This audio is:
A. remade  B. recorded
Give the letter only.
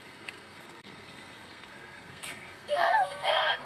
A